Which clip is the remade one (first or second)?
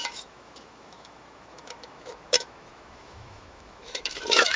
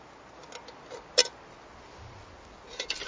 first